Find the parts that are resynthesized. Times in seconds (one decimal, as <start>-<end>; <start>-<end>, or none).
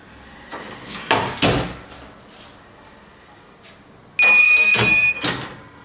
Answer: 4.4-5.1